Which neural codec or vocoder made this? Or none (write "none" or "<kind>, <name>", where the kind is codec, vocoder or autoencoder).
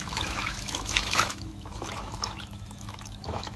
autoencoder, DAC-VAE